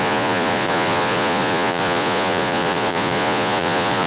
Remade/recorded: remade